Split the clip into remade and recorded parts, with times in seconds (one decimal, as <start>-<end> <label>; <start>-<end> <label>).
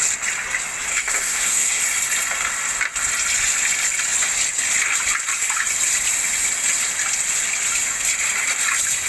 0.0-0.9 recorded; 0.9-1.8 remade; 1.8-9.1 recorded